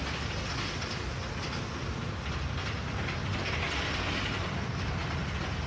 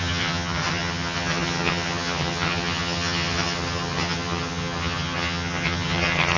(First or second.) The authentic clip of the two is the first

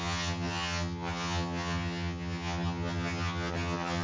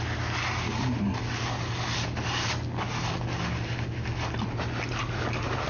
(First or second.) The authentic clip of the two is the second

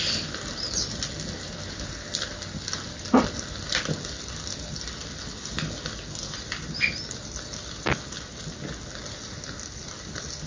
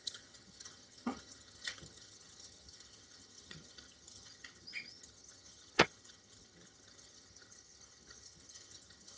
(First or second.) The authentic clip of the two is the first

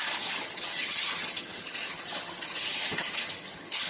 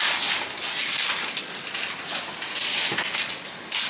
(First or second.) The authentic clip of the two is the second